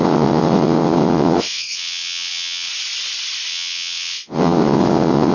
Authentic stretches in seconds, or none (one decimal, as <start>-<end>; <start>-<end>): 2.7-3.5